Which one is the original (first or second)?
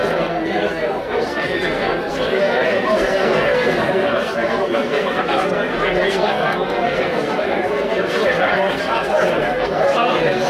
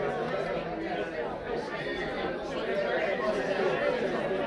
second